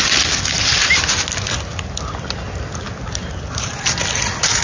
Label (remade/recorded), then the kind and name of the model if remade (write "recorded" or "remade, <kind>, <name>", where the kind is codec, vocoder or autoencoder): recorded